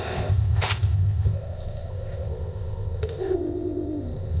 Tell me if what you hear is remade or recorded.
remade